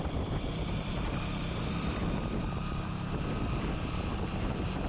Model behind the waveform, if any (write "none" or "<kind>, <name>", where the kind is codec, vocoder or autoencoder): vocoder, BigVGAN v2